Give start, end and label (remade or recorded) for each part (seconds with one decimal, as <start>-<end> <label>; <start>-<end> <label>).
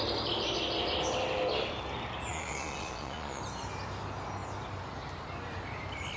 0.0-2.3 recorded; 2.3-3.4 remade; 3.4-6.2 recorded